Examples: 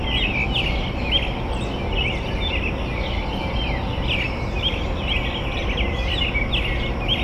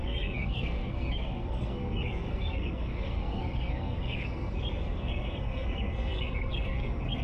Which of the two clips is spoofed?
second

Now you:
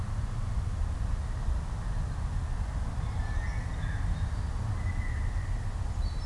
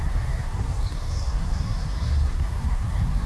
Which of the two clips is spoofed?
second